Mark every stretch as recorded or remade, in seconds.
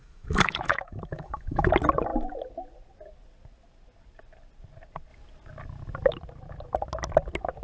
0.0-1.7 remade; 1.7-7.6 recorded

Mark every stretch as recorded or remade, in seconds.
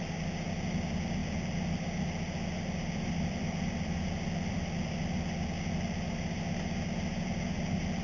0.0-1.2 recorded; 1.2-5.0 remade; 5.0-8.0 recorded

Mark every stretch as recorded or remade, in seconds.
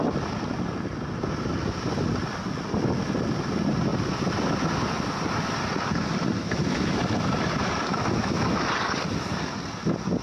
0.0-6.4 recorded; 6.4-7.0 remade; 7.0-7.9 recorded; 7.9-8.6 remade; 8.6-10.2 recorded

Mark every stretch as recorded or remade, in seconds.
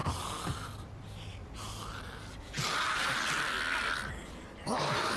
0.0-5.2 recorded